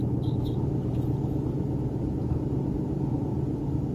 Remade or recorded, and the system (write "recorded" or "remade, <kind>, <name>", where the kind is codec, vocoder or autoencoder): recorded